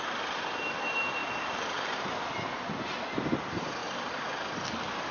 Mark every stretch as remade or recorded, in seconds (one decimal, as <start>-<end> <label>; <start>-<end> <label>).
0.0-5.1 recorded